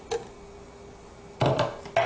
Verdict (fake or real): real